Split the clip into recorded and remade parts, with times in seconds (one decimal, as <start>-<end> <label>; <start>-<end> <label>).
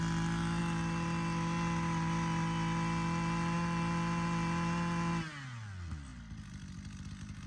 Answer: 0.0-7.5 recorded